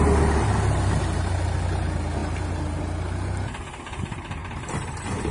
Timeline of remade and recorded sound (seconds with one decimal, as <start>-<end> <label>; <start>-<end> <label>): 0.0-4.4 recorded; 4.4-5.3 remade